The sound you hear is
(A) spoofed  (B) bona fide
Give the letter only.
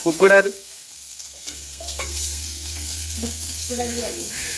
A